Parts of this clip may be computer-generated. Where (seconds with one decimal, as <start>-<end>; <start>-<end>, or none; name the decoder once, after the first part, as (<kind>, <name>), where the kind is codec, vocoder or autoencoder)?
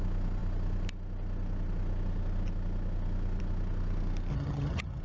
4.3-5.0 (vocoder, HiFi-GAN)